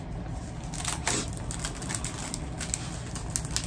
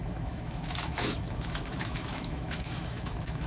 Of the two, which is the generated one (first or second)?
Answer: second